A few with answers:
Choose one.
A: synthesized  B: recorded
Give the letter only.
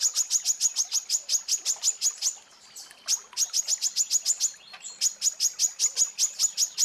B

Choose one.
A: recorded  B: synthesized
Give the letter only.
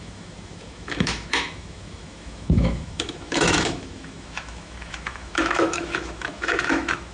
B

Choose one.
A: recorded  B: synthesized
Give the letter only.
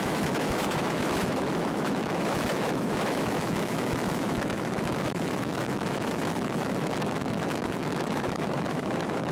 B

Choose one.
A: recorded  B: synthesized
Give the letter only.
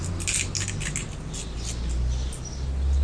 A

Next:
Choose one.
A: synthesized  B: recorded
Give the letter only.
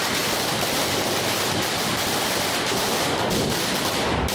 B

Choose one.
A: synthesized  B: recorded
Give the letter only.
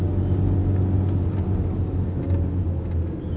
B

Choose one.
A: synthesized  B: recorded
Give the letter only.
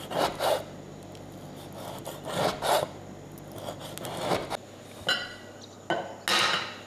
B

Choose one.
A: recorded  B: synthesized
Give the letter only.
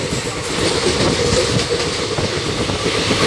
A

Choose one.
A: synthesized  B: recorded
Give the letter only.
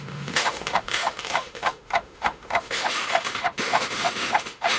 A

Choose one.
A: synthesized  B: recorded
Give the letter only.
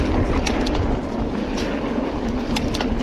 B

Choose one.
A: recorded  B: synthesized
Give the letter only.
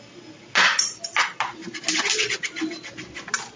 A